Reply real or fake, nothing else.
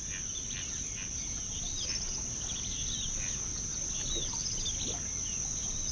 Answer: real